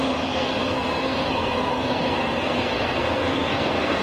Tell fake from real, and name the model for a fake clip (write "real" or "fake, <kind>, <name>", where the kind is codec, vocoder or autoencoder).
fake, codec, SNAC